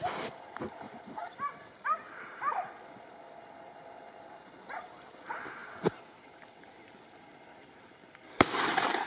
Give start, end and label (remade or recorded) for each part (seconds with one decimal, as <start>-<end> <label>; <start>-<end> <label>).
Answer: 0.0-9.1 recorded